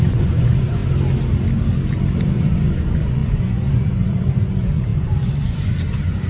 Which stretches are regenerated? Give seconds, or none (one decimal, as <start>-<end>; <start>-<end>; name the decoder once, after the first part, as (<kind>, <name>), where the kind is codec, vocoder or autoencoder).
0.0-0.8 (vocoder, Vocos); 2.3-6.3